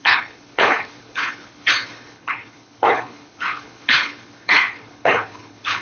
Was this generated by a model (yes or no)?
yes